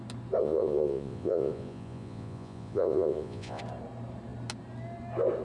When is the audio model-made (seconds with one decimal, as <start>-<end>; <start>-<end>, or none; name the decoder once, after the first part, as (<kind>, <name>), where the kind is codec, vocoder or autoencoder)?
0.4-3.6 (vocoder, Vocos)